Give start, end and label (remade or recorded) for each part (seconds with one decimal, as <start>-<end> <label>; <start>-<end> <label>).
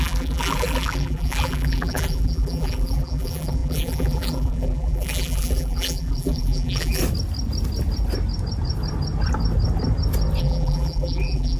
0.0-7.0 remade; 7.0-10.4 recorded; 10.4-11.6 remade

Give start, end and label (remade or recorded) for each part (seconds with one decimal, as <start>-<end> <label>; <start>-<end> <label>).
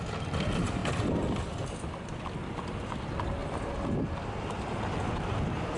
0.0-3.4 remade; 3.4-4.0 recorded; 4.0-5.8 remade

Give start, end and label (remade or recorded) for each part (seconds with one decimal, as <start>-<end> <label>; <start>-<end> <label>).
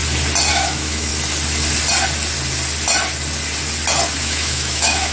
0.0-0.5 recorded; 0.5-1.1 remade; 1.1-4.2 recorded; 4.2-5.1 remade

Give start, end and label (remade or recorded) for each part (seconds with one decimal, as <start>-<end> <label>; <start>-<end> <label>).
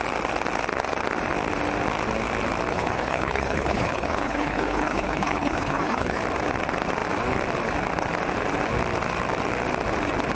0.0-2.7 recorded; 2.7-6.2 remade; 6.2-10.3 recorded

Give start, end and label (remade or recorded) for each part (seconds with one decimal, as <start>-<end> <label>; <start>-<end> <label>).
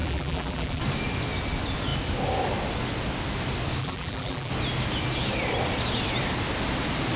0.0-0.8 remade; 0.8-3.8 recorded; 3.8-4.5 remade; 4.5-7.2 recorded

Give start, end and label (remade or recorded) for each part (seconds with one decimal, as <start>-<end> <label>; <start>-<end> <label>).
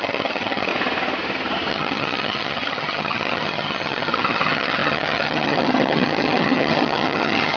0.0-0.7 remade; 0.7-1.7 recorded; 1.7-7.6 remade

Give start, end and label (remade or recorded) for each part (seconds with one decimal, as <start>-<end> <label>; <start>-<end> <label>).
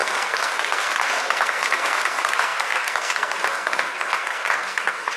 0.0-5.2 remade